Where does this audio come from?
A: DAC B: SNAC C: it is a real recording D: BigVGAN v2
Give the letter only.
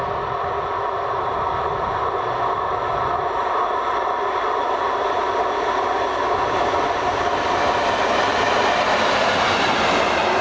D